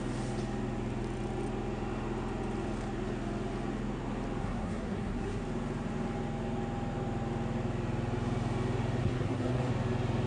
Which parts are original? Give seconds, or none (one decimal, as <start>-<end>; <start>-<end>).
0.0-4.4; 5.4-9.0; 9.7-10.3

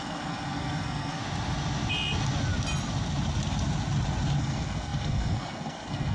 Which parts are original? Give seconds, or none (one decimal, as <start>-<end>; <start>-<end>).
1.2-4.4

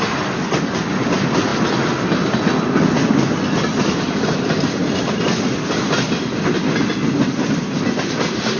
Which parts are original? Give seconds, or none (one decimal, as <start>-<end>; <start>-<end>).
0.0-8.6

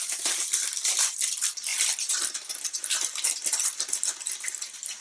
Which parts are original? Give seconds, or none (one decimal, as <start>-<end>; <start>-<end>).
0.0-5.0

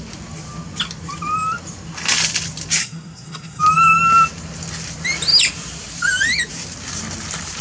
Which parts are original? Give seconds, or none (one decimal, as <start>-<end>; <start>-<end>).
0.0-2.8; 3.6-7.6